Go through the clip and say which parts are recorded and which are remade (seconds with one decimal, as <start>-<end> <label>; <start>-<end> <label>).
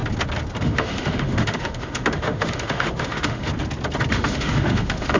0.0-0.6 recorded; 0.6-3.5 remade; 3.5-4.1 recorded; 4.1-5.2 remade